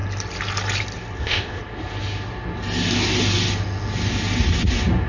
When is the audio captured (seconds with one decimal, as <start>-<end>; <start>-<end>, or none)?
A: 0.0-1.2; 1.6-5.1